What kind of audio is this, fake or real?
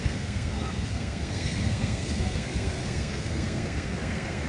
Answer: fake